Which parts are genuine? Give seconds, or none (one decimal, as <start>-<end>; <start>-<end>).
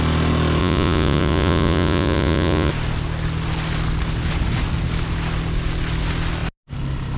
0.0-0.6; 2.7-7.2